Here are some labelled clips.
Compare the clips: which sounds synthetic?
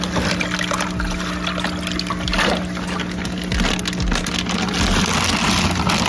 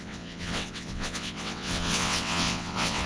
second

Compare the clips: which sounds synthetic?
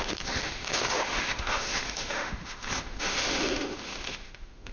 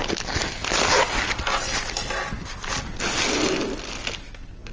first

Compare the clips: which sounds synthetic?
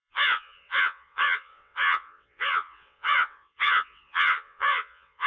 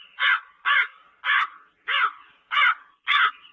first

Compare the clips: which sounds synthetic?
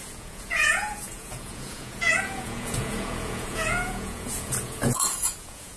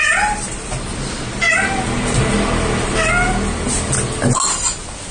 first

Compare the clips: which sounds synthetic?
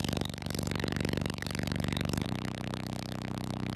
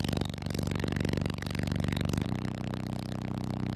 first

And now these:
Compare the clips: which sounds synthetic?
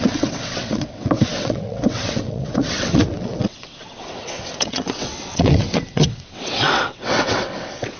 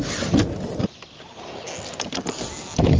first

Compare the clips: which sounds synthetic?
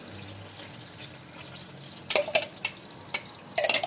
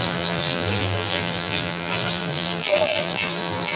second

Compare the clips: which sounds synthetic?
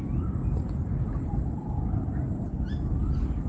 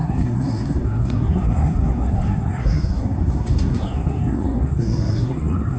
second